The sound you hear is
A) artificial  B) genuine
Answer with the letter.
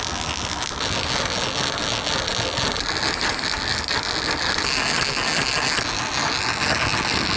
B